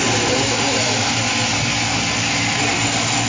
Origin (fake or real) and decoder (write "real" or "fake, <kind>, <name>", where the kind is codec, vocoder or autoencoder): fake, vocoder, BigVGAN v2